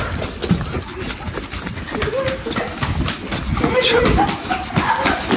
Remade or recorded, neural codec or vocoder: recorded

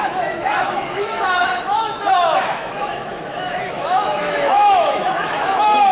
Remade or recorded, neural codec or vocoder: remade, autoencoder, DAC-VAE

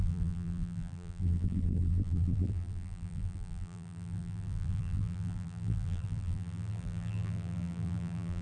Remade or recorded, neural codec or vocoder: remade, vocoder, BigVGAN v2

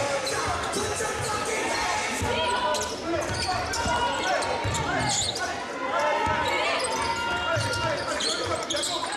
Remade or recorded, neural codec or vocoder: recorded